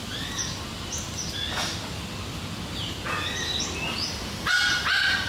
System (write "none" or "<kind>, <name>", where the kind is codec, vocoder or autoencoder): none